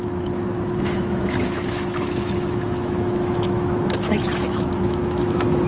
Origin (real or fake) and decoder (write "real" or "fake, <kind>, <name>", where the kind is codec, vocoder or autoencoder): fake, autoencoder, DAC-VAE